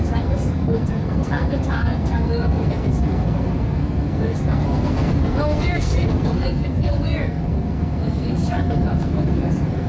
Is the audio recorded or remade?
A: remade